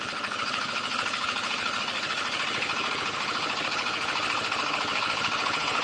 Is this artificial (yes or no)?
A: yes